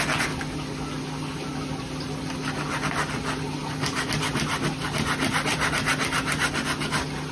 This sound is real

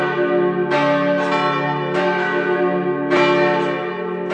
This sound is real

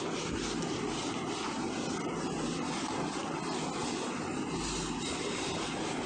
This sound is real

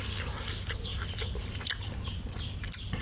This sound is real